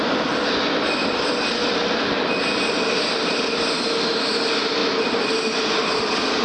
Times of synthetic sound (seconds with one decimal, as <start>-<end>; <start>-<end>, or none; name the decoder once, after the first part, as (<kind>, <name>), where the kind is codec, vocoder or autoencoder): none